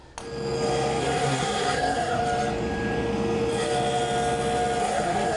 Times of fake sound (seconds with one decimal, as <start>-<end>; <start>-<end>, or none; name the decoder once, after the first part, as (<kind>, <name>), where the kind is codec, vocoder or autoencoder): 1.0-2.2 (codec, SNAC); 4.8-5.4

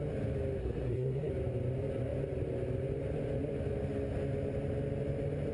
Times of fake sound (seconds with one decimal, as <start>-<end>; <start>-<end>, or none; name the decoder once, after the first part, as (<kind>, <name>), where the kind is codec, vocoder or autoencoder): 0.6-1.3 (codec, SNAC)